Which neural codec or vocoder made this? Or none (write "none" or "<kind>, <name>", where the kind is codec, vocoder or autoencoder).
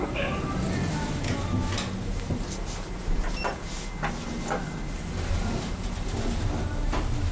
none